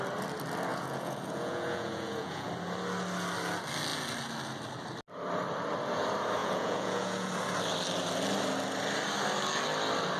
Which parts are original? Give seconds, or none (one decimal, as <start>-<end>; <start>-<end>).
0.0-0.7; 2.5-6.4; 7.3-10.2